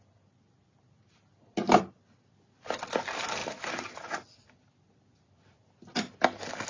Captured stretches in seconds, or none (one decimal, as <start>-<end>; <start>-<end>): 0.0-6.7